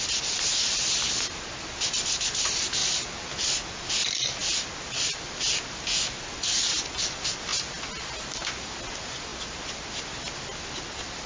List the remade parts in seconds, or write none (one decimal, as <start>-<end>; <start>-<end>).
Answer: none